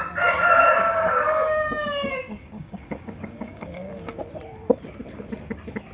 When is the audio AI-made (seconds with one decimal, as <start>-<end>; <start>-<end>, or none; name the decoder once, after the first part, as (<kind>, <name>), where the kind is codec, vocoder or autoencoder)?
0.6-4.1 (codec, DAC)